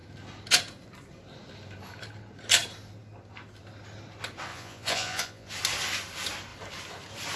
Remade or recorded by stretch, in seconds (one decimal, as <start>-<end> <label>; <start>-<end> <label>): 0.0-4.5 recorded; 4.5-5.5 remade; 5.5-7.4 recorded